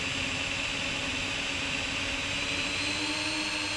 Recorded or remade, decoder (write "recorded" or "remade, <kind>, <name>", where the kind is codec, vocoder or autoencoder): recorded